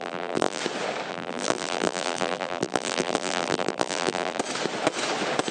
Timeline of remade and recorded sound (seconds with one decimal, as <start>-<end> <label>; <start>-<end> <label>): 0.0-0.6 remade; 0.6-1.1 recorded; 1.1-4.4 remade; 4.4-5.5 recorded